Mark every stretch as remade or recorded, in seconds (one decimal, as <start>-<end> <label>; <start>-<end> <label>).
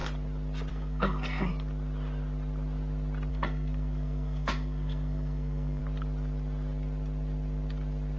0.0-0.7 recorded; 0.7-1.5 remade; 1.5-3.3 recorded; 3.3-5.8 remade; 5.8-8.2 recorded